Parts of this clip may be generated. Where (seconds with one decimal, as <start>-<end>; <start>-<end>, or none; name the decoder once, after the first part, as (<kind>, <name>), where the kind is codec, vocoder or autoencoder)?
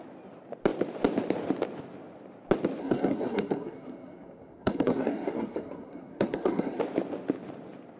2.8-6.8 (codec, SNAC)